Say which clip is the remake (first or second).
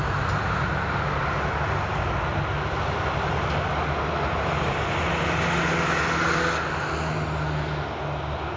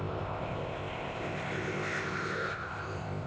second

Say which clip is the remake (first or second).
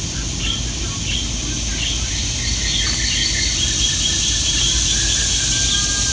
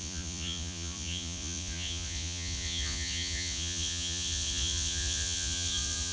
second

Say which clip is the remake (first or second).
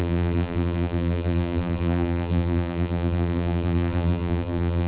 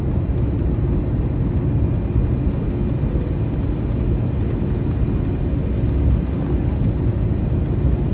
first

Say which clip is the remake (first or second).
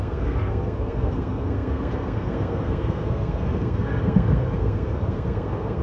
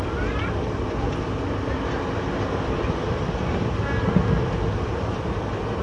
first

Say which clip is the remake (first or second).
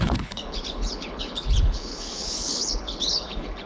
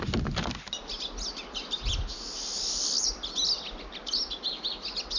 first